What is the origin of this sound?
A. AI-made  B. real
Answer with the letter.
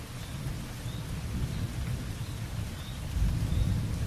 B